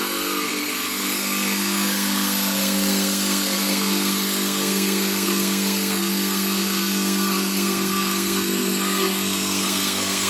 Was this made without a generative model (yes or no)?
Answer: no